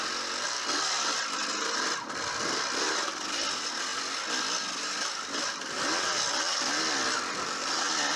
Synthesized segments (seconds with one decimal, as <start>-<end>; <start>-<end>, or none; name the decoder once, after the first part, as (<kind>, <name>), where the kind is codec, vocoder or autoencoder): none